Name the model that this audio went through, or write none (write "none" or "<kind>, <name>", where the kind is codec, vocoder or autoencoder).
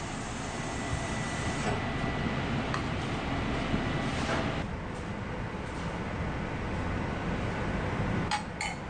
none